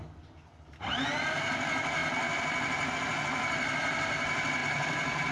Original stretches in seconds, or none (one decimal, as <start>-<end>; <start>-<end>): 0.0-5.3